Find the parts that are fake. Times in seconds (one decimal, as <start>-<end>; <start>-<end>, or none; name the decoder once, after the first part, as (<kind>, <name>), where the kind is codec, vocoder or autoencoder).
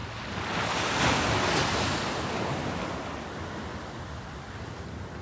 none